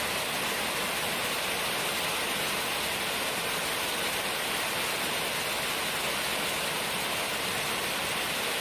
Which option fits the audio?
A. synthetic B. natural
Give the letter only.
B